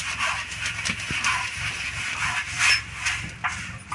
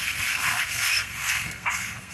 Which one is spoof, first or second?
second